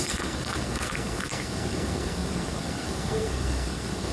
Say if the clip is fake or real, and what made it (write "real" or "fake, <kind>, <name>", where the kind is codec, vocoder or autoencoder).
fake, codec, SNAC